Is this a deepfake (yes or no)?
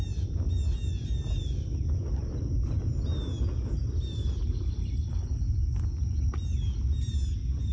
no